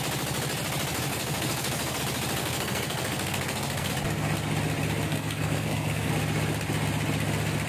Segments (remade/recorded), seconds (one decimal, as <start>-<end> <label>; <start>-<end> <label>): 0.0-1.1 recorded; 1.1-2.0 remade; 2.0-2.4 recorded; 2.4-3.9 remade; 3.9-5.1 recorded; 5.1-6.1 remade; 6.1-7.7 recorded